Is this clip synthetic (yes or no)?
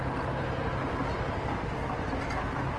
no